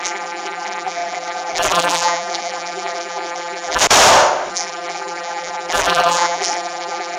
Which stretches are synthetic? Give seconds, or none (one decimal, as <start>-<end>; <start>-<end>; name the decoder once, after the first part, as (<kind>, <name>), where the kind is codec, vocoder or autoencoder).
0.0-3.8 (vocoder, BigVGAN v2); 4.5-7.2